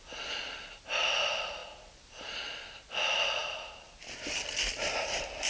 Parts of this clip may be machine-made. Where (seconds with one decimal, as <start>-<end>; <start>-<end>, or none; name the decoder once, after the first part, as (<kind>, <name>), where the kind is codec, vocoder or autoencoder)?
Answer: none